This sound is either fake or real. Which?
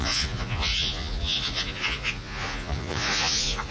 fake